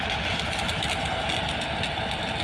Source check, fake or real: real